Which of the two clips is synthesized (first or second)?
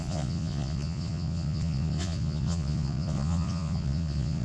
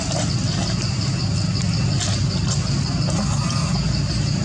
first